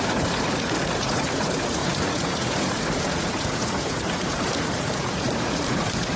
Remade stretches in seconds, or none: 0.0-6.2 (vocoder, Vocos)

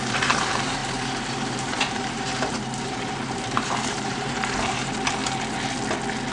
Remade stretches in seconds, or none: 0.0-5.2 (vocoder, BigVGAN v2)

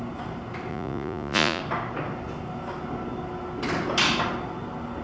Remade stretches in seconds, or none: 0.7-1.6 (vocoder, Vocos)

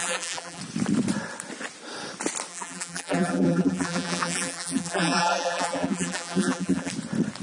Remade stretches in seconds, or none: 0.0-0.6 (vocoder, BigVGAN v2); 2.5-6.9

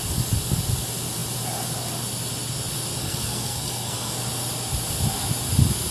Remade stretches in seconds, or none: 3.0-4.2 (codec, SNAC)